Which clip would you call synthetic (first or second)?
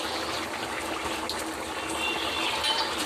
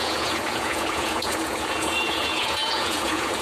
second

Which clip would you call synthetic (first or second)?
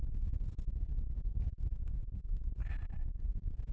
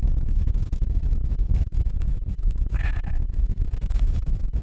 second